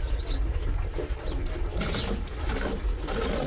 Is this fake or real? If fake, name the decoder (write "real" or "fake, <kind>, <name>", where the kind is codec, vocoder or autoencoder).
real